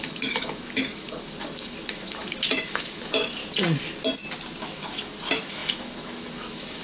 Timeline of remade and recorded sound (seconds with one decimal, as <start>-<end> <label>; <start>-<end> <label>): 0.0-3.4 remade; 3.4-4.6 recorded; 4.6-6.8 remade